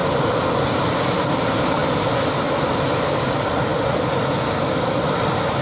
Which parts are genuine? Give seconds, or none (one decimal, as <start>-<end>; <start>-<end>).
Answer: 1.8-2.9